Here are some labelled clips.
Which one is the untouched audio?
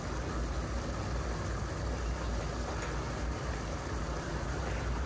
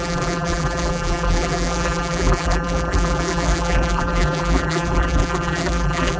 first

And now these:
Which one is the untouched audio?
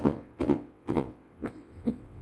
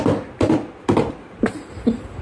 second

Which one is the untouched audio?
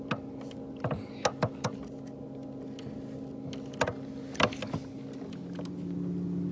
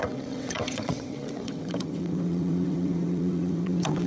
first